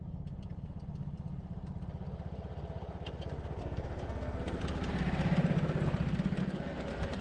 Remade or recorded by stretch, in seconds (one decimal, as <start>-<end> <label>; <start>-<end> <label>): 0.0-3.6 recorded; 3.6-4.6 remade; 4.6-6.4 recorded; 6.4-7.2 remade